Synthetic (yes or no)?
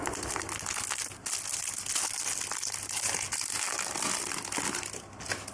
no